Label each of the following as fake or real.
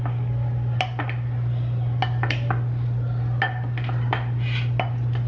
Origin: real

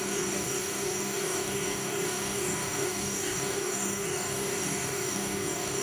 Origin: fake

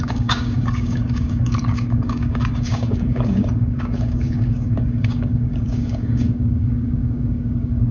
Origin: fake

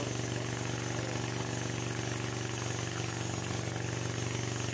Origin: real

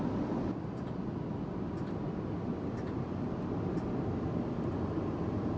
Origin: real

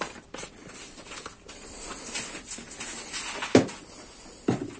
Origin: real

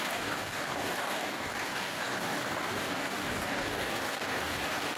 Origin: fake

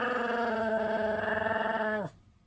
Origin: real